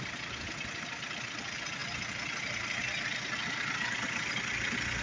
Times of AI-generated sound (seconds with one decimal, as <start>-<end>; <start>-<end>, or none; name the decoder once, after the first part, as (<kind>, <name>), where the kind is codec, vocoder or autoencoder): none